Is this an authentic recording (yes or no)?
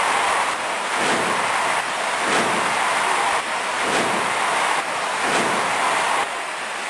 yes